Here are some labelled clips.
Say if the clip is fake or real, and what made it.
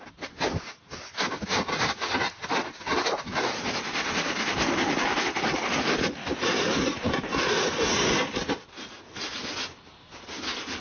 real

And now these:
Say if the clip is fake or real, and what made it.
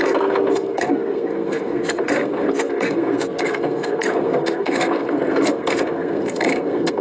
fake, codec, SNAC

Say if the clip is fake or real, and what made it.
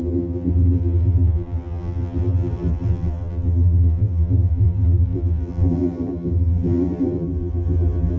fake, vocoder, BigVGAN v2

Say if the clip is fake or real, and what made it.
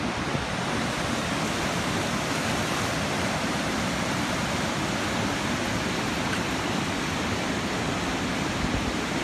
real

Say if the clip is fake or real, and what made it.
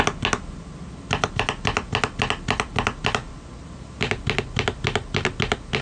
real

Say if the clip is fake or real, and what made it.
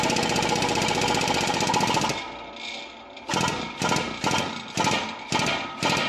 real